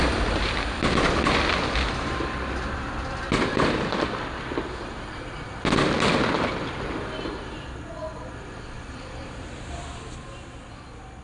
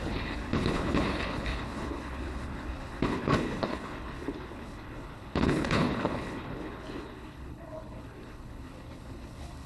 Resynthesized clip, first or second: second